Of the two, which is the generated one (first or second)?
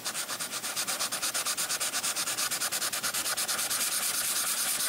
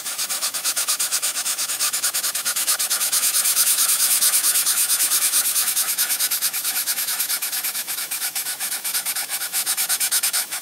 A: second